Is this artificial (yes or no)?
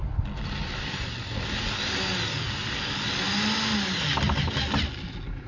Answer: no